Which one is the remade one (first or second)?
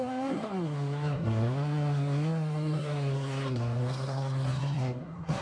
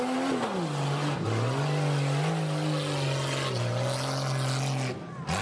first